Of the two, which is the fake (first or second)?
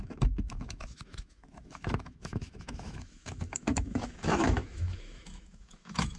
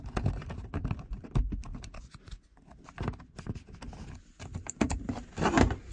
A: first